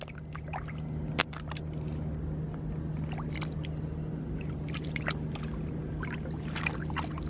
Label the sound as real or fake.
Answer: real